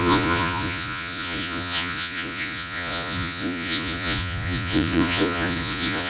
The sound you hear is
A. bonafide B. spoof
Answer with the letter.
B